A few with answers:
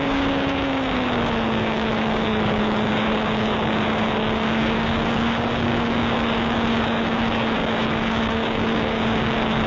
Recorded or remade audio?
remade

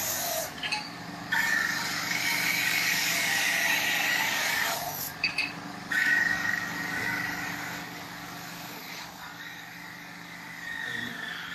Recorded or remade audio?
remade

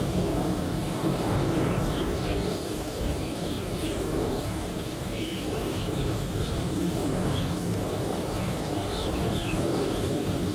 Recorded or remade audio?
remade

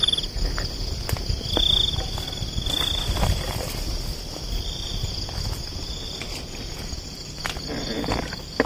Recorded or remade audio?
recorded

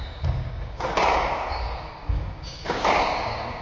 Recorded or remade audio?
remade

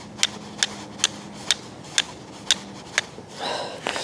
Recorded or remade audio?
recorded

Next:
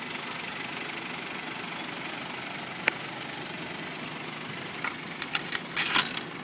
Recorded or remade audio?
recorded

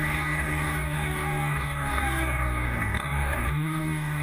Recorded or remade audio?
remade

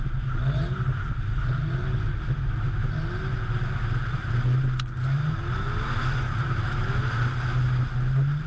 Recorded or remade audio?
recorded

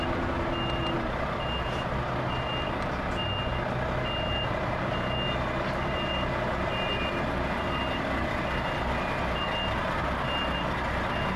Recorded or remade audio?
recorded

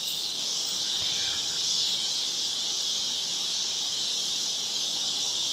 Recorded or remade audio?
remade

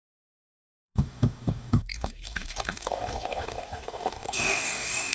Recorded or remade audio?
remade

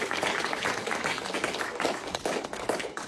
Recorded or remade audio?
remade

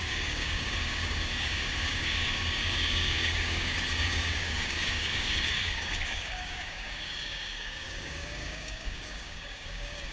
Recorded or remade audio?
remade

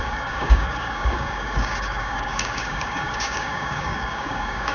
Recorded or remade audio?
remade